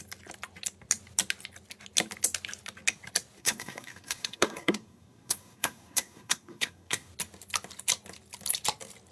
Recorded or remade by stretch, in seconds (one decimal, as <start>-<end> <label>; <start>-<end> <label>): 0.0-3.4 recorded; 3.4-7.1 remade; 7.1-9.1 recorded